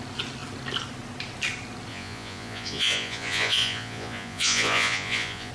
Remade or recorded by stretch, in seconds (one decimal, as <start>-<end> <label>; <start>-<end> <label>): 0.0-1.9 recorded; 1.9-5.5 remade

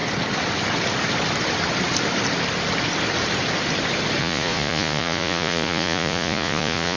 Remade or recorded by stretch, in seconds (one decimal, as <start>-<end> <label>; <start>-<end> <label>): 0.0-4.2 recorded; 4.2-7.0 remade

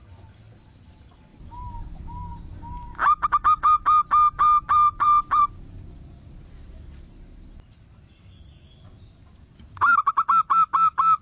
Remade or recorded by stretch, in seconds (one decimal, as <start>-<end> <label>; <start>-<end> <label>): 0.0-11.2 recorded

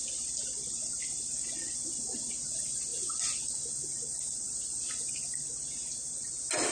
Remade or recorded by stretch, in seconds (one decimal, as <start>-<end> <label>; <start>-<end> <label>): 0.0-1.3 remade; 1.3-6.7 recorded